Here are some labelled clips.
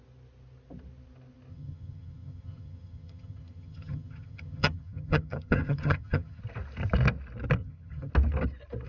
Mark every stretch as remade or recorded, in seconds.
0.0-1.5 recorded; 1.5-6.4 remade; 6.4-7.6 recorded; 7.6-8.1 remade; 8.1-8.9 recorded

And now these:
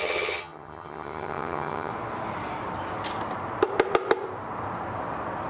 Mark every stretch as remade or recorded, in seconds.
0.0-1.9 remade; 1.9-5.5 recorded

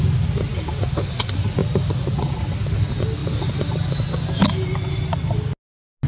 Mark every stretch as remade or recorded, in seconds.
0.0-3.2 recorded; 3.2-4.0 remade; 4.0-6.1 recorded

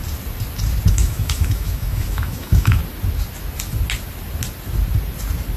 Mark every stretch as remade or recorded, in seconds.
0.0-0.9 recorded; 0.9-2.8 remade; 2.8-5.6 recorded

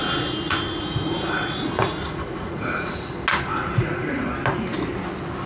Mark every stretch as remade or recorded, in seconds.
0.0-3.1 remade; 3.1-3.5 recorded; 3.5-4.3 remade; 4.3-5.5 recorded